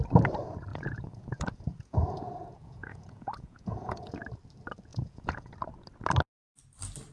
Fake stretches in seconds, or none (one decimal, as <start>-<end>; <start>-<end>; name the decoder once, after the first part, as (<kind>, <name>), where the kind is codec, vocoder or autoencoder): 0.7-4.2 (vocoder, Vocos); 4.9-5.5